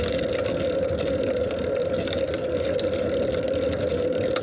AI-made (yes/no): no